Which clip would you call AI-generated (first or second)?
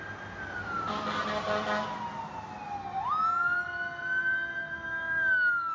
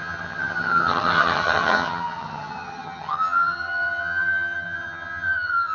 second